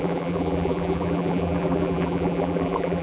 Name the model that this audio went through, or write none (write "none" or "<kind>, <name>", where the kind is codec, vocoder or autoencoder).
vocoder, BigVGAN v2